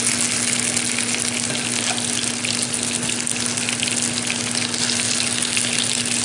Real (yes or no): yes